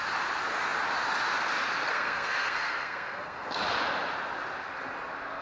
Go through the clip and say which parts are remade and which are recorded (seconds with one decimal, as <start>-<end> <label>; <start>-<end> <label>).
0.0-1.9 recorded; 1.9-3.6 remade; 3.6-5.4 recorded